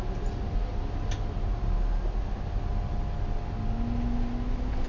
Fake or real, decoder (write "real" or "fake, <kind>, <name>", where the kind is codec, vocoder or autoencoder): real